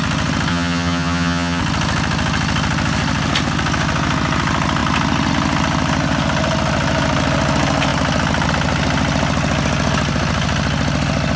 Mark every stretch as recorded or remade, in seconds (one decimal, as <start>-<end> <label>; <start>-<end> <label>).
0.0-0.5 recorded; 0.5-1.6 remade; 1.6-11.4 recorded